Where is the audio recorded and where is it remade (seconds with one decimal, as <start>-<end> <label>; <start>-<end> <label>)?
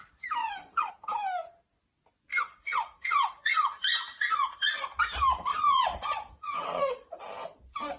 0.0-0.4 recorded; 0.4-0.9 remade; 0.9-2.3 recorded; 2.3-4.7 remade; 4.7-5.5 recorded; 5.5-7.2 remade; 7.2-8.0 recorded